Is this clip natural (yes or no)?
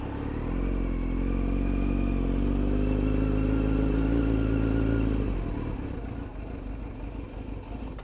yes